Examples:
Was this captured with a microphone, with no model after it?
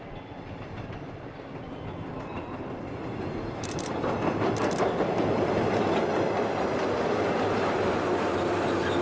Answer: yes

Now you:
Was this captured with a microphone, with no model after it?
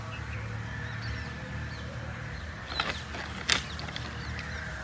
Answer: yes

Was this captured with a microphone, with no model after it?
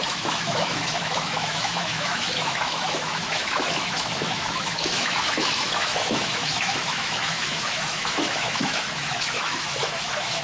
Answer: no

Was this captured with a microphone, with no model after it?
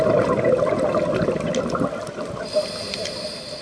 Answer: yes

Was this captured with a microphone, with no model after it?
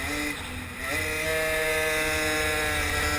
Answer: yes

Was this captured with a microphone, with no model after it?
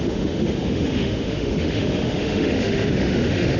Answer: no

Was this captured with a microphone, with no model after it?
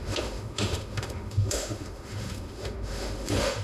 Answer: no